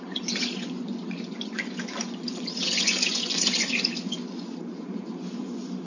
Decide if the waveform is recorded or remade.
remade